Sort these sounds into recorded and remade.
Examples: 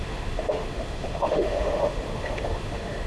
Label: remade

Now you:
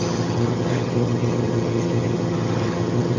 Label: remade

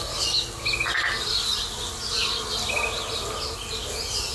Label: recorded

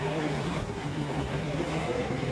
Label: remade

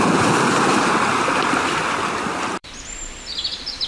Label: remade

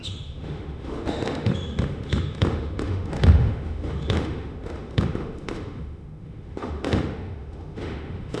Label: remade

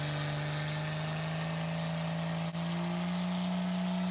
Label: recorded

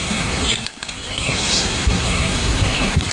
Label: remade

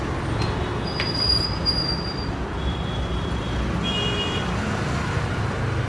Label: recorded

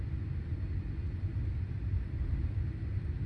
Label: recorded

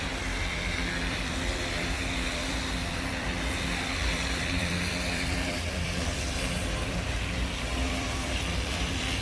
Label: remade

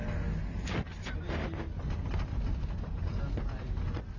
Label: recorded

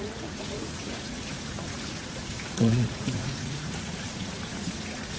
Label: remade